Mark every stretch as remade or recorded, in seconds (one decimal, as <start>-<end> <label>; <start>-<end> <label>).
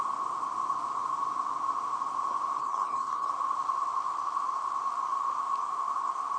0.0-2.6 recorded; 2.6-3.3 remade; 3.3-6.4 recorded